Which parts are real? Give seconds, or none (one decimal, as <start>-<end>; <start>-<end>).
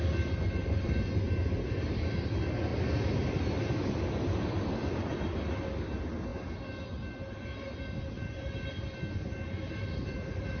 0.0-10.6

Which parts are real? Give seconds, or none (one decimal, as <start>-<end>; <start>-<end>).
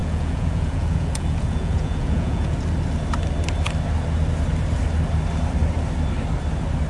2.6-6.9